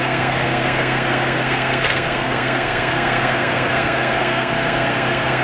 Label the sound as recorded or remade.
remade